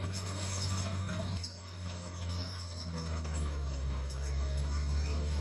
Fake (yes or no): yes